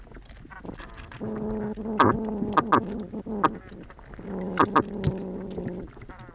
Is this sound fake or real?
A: real